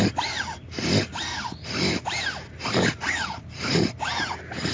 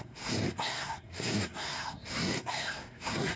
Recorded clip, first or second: first